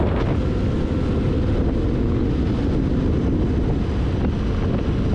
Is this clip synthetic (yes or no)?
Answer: no